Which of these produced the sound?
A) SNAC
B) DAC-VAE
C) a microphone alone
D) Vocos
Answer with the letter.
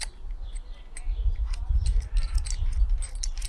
C